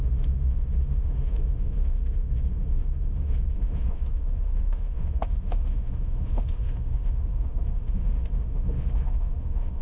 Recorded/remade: remade